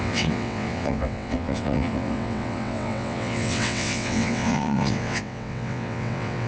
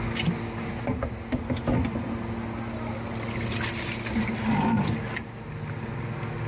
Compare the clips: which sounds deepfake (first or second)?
first